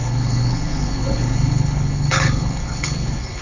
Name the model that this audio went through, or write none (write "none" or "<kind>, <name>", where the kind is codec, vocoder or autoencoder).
codec, HILCodec